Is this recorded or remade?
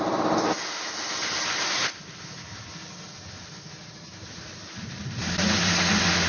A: recorded